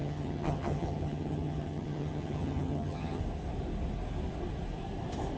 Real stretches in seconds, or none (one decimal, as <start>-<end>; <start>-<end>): 3.2-5.4